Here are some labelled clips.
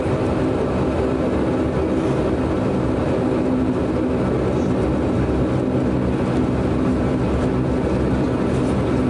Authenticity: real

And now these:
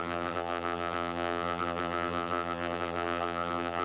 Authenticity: fake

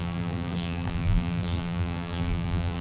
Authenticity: fake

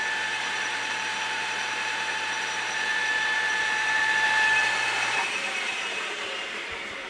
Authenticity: fake